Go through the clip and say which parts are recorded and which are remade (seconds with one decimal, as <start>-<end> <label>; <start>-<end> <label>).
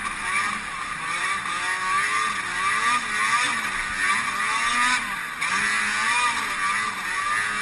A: 0.0-1.4 remade; 1.4-7.6 recorded